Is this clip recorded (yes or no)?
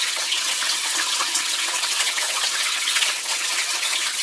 no